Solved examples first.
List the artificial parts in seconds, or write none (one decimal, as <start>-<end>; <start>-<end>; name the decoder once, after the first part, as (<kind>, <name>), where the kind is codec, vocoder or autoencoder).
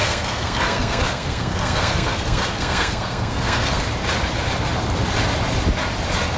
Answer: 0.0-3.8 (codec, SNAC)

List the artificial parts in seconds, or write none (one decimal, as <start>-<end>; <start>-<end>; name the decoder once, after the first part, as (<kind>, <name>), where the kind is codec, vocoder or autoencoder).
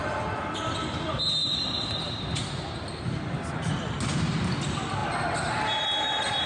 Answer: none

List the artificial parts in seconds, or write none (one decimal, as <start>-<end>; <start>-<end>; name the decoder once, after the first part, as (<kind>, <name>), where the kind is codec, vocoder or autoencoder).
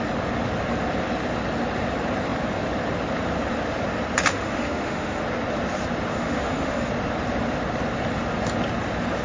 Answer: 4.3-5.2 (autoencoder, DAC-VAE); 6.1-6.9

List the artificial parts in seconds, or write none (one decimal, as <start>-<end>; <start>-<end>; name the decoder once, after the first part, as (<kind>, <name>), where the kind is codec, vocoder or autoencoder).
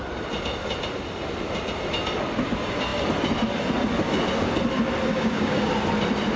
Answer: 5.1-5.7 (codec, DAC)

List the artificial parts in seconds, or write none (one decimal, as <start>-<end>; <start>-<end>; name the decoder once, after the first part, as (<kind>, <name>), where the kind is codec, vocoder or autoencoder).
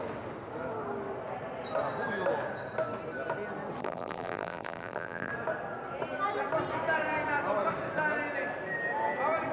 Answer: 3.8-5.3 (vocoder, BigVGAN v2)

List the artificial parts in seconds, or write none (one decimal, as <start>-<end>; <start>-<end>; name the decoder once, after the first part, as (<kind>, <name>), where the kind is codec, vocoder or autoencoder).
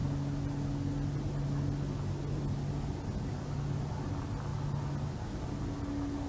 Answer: none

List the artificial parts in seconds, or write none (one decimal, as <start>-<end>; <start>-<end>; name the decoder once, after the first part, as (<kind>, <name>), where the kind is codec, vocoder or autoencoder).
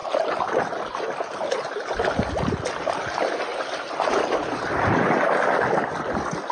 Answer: 0.0-2.2 (vocoder, BigVGAN v2); 3.5-6.5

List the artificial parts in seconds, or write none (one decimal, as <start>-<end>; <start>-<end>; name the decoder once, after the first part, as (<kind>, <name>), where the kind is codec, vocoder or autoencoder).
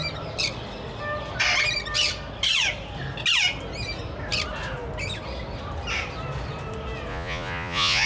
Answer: 7.1-8.1 (vocoder, Vocos)